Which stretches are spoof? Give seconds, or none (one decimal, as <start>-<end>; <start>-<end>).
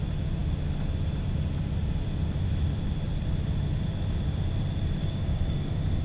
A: 5.0-6.0